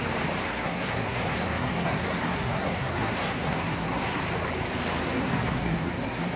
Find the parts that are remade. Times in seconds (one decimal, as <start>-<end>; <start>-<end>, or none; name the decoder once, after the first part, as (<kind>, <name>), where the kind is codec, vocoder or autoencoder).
0.4-4.2 (codec, SNAC); 5.0-6.4